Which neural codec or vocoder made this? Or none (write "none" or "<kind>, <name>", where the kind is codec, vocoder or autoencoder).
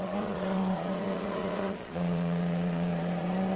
vocoder, Vocos